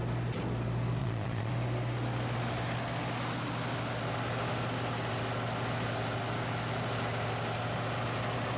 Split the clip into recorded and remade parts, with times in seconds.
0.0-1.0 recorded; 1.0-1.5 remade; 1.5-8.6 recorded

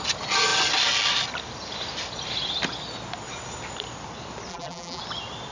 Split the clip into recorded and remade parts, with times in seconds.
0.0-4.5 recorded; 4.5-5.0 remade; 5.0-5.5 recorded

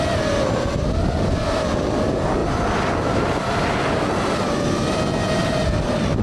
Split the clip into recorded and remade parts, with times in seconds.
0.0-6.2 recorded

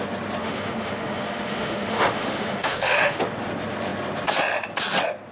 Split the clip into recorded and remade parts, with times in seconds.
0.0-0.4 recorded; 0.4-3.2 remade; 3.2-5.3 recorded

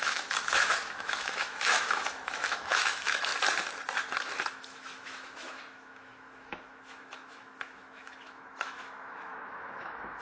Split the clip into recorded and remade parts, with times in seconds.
0.0-3.3 remade; 3.3-4.5 recorded; 4.5-10.2 remade

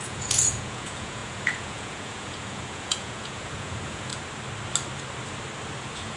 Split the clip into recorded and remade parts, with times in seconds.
0.0-4.1 remade; 4.1-5.8 recorded; 5.8-6.2 remade